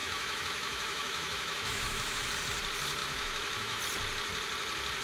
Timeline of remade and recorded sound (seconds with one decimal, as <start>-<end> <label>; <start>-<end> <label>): 0.0-2.3 remade; 2.3-3.0 recorded; 3.0-3.8 remade; 3.8-5.0 recorded